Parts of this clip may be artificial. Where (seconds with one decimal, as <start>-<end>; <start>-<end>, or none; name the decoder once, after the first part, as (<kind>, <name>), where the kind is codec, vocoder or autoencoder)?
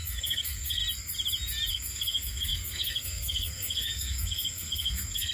0.0-0.8 (codec, SNAC); 1.7-5.3